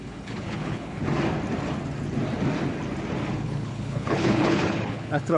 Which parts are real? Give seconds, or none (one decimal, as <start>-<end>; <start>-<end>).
1.0-3.3